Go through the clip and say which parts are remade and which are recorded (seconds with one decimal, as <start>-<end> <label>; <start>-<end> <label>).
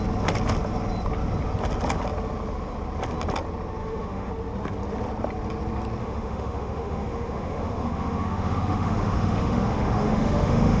0.0-3.8 recorded; 3.8-4.3 remade; 4.3-6.0 recorded; 6.0-10.8 remade